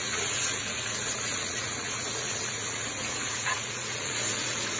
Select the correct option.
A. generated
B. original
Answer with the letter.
A